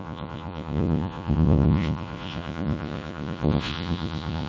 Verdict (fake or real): fake